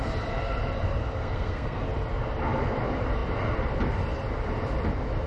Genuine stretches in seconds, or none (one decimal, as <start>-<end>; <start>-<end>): 0.0-1.2; 1.8-5.3